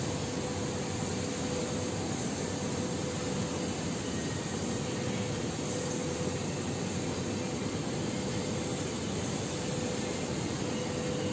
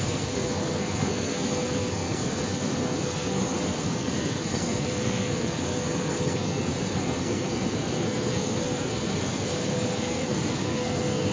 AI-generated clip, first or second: second